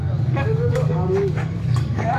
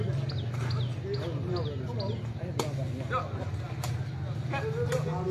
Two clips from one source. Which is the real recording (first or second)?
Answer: second